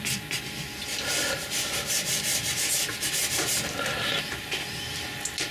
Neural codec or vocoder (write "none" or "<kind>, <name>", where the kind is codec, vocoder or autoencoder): vocoder, BigVGAN v2